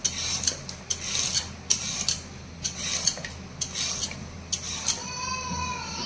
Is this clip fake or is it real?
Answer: real